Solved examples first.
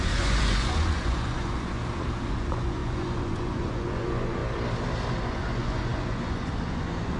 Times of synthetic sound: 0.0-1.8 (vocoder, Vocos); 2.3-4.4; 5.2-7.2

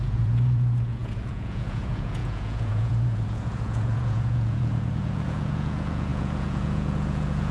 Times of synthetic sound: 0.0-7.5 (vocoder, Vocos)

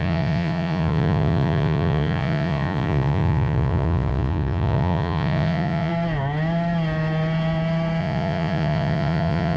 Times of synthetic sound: 0.0-5.9 (vocoder, Vocos); 8.0-9.6

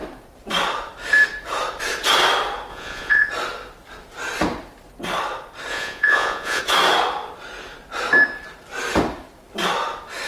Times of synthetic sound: 2.7-3.3 (vocoder, Vocos); 5.7-6.6

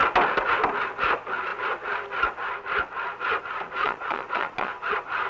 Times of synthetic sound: 3.8-4.7 (vocoder, Vocos)

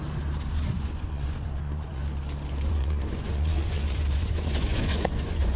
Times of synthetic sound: 0.5-2.0 (vocoder, Vocos); 2.7-5.6

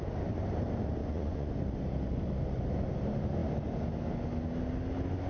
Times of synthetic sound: 1.0-1.5 (vocoder, Vocos)